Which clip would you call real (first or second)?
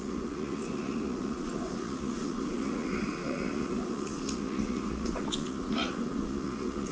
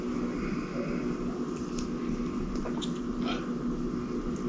second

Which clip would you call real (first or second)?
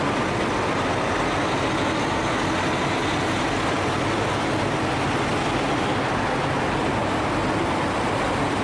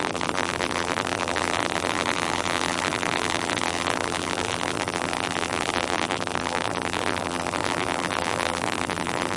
first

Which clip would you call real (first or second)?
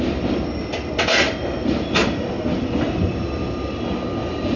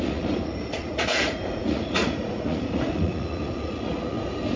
first